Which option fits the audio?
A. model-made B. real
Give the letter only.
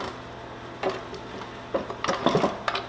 B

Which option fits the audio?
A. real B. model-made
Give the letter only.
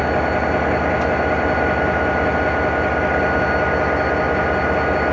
A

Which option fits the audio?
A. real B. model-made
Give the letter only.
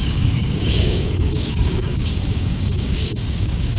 B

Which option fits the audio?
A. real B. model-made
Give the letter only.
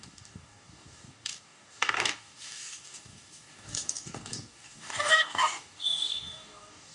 B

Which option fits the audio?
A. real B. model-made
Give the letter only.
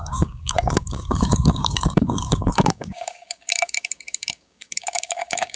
B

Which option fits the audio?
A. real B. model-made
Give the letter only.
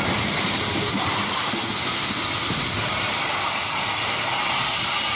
A